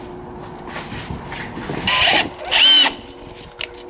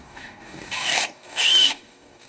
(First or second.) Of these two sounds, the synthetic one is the second